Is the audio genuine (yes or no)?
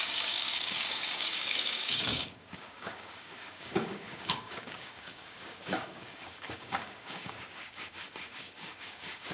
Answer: no